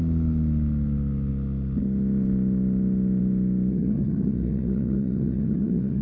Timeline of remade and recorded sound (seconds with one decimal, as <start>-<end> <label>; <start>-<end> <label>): 0.0-3.7 recorded; 3.7-6.0 remade